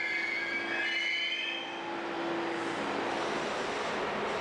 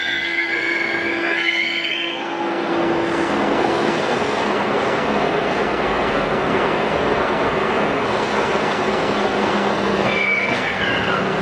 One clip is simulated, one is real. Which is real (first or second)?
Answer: first